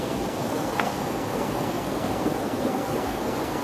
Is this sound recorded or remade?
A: remade